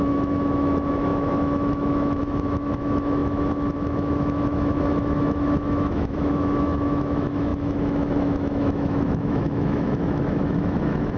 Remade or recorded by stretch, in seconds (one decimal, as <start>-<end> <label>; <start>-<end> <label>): 0.0-11.2 remade